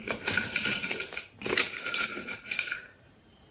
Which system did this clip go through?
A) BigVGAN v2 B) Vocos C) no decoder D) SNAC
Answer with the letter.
A